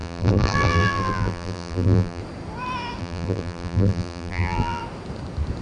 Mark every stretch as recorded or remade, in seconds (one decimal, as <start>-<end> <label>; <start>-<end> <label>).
0.0-2.2 remade; 2.2-3.0 recorded; 3.0-4.8 remade; 4.8-5.6 recorded